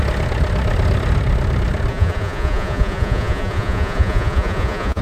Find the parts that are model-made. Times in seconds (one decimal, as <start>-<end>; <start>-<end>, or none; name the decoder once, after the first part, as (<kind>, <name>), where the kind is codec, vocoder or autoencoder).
1.9-5.0 (vocoder, Vocos)